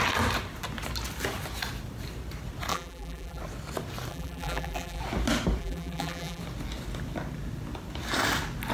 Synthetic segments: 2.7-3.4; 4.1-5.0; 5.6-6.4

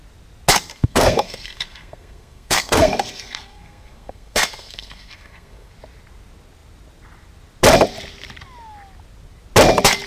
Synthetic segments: 0.7-5.7

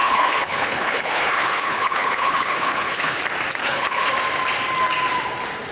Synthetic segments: 0.0-3.2; 3.6-4.1

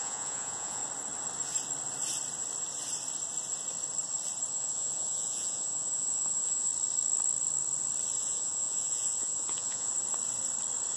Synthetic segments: 0.0-0.8; 4.5-6.7; 8.2-9.9